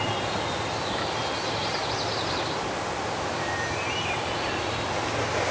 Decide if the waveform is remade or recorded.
recorded